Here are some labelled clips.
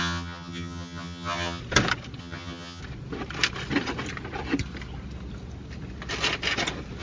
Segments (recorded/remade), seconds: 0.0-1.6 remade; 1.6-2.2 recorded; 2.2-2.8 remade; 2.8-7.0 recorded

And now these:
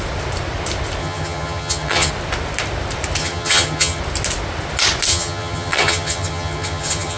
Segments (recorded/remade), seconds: 0.0-1.0 recorded; 1.0-2.1 remade; 2.1-3.2 recorded; 3.2-4.0 remade; 4.0-5.1 recorded; 5.1-7.2 remade

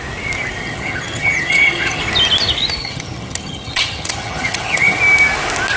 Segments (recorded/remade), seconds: 0.0-0.6 recorded; 0.6-2.0 remade; 2.0-2.8 recorded; 2.8-5.0 remade; 5.0-5.8 recorded

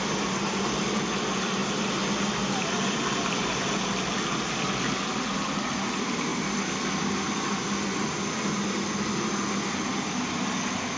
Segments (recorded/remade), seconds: 0.0-11.0 recorded

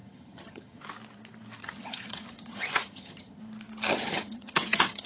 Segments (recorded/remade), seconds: 0.0-0.8 remade; 0.8-1.6 recorded; 1.6-3.4 remade; 3.4-3.9 recorded; 3.9-5.1 remade

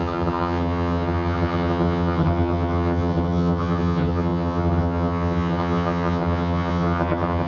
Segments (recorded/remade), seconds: 0.0-7.5 remade

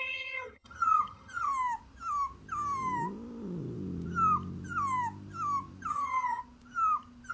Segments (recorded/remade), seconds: 0.0-1.5 remade; 1.5-5.9 recorded; 5.9-6.4 remade; 6.4-7.3 recorded

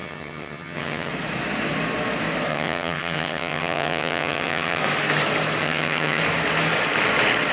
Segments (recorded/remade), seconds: 0.0-1.1 remade; 1.1-2.5 recorded; 2.5-4.8 remade; 4.8-5.6 recorded; 5.6-6.2 remade; 6.2-7.5 recorded